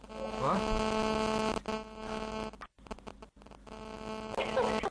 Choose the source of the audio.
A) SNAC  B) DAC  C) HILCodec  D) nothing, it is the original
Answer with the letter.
D